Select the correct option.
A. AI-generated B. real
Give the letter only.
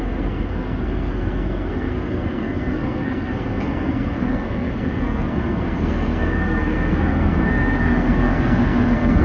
A